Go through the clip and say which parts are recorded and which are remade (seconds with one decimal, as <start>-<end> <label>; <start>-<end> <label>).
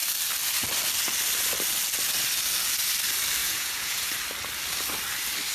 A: 0.0-3.4 recorded; 3.4-4.1 remade; 4.1-5.5 recorded